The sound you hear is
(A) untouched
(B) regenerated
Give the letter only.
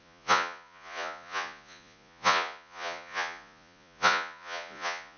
B